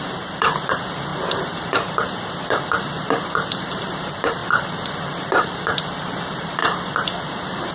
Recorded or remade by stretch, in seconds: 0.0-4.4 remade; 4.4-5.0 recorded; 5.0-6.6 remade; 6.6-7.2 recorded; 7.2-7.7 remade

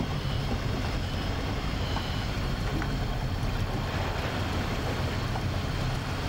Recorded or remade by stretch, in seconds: 0.0-2.7 remade; 2.7-6.3 recorded